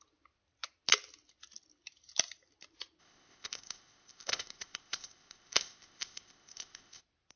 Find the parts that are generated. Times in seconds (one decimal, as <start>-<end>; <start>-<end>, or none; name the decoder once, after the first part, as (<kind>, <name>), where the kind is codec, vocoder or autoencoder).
3.0-7.0 (codec, ZipCodec)